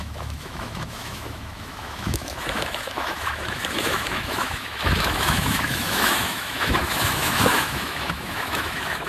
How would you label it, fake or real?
fake